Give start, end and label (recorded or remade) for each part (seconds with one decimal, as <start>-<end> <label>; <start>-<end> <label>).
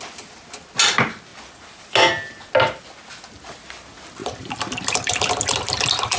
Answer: 0.0-6.2 recorded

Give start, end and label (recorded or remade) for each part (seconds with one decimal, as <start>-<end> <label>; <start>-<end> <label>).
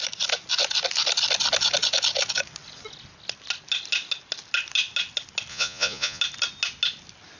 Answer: 0.0-5.5 recorded; 5.5-6.2 remade; 6.2-7.4 recorded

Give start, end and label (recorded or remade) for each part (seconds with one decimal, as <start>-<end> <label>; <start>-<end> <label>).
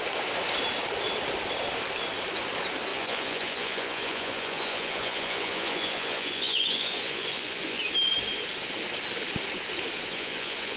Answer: 0.0-2.9 recorded; 2.9-7.8 remade; 7.8-10.1 recorded; 10.1-10.8 remade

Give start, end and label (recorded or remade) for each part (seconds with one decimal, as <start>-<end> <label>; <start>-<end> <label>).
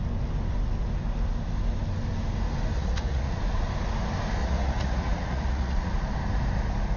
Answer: 0.0-2.8 recorded; 2.8-3.4 remade; 3.4-4.4 recorded; 4.4-5.9 remade; 5.9-7.0 recorded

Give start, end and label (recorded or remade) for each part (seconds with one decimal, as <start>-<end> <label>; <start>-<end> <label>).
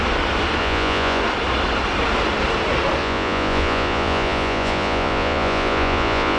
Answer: 0.0-0.6 recorded; 0.6-1.2 remade; 1.2-3.0 recorded; 3.0-6.4 remade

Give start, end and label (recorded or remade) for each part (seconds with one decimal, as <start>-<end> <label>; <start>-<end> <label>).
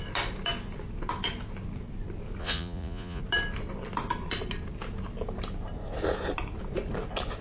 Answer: 0.0-2.4 recorded; 2.4-3.2 remade; 3.2-7.4 recorded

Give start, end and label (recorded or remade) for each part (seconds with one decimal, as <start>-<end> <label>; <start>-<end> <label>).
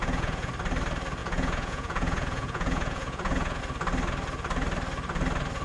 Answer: 0.0-0.5 remade; 0.5-1.2 recorded; 1.2-3.6 remade; 3.6-5.6 recorded